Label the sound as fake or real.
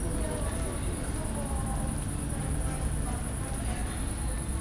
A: real